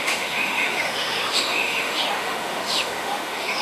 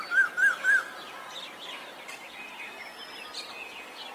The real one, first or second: second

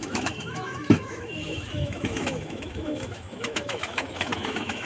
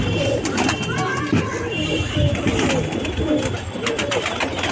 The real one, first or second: second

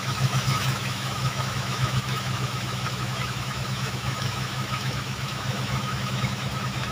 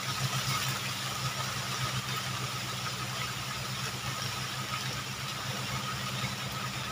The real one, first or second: second